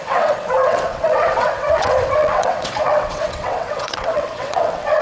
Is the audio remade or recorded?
remade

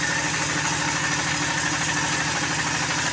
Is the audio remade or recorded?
recorded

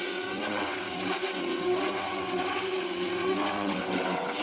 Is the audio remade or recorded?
remade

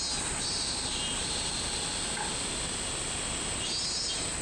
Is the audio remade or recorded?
recorded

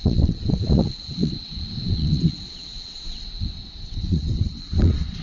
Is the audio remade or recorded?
remade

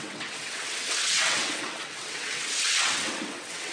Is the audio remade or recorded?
remade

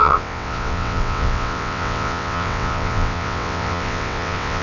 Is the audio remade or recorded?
remade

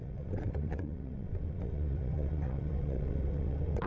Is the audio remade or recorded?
remade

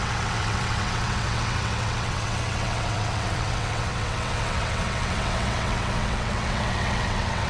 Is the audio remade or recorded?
remade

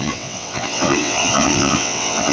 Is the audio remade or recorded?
remade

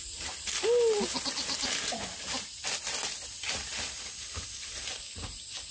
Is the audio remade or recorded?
recorded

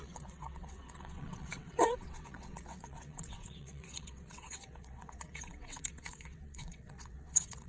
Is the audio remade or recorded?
remade